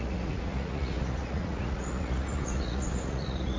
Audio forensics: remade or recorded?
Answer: remade